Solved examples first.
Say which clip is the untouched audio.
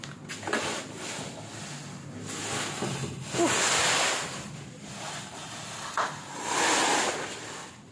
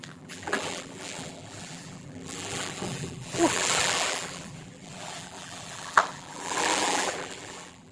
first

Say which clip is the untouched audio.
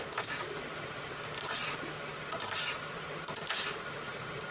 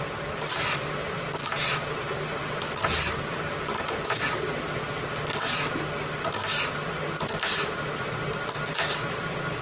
second